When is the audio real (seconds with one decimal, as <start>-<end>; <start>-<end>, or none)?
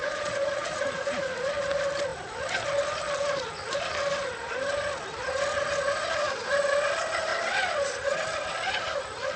1.5-9.4